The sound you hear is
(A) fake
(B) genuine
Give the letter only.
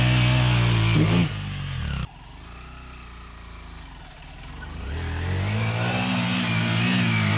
B